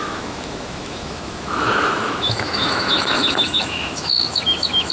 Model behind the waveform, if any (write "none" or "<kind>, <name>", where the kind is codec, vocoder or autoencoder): autoencoder, DAC-VAE